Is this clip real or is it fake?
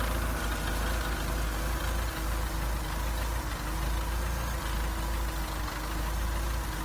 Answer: real